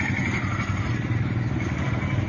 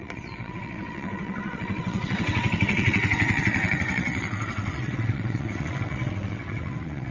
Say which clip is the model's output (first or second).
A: second